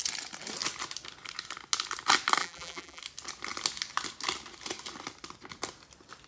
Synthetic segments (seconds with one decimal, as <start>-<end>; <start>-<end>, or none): 2.4-3.0